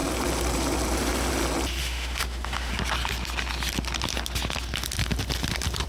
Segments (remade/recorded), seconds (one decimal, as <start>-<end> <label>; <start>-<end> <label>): 0.0-1.8 recorded; 1.8-2.7 remade; 2.7-5.9 recorded